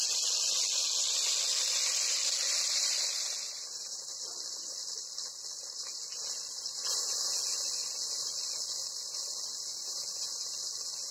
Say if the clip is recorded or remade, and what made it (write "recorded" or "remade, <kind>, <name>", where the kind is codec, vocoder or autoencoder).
recorded